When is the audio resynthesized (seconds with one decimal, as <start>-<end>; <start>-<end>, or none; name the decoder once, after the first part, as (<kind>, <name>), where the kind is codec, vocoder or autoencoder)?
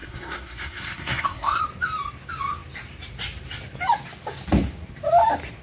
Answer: 0.0-1.6 (codec, SNAC)